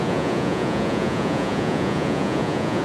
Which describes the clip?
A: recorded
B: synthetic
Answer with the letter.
B